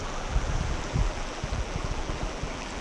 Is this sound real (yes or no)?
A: no